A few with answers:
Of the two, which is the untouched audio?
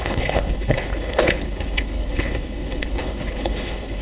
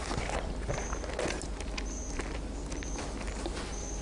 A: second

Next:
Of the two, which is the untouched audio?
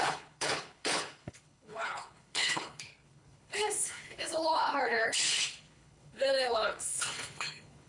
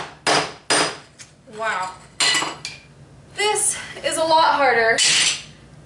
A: second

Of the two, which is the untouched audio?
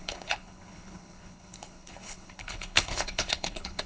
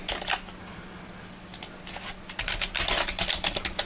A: second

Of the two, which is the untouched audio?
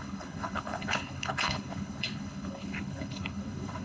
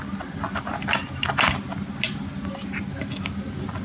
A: second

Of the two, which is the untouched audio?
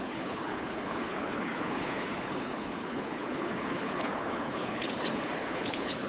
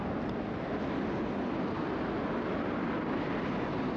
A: second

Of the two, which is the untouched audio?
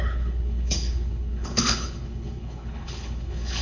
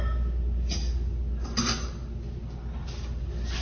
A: second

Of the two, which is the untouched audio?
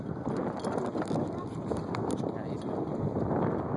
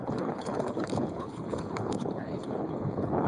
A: first